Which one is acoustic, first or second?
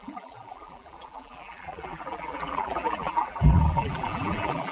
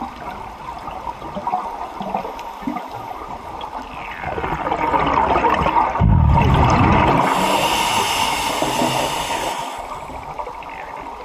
second